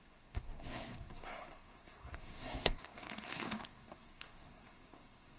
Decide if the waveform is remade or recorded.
remade